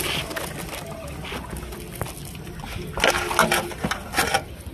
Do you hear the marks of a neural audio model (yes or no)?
no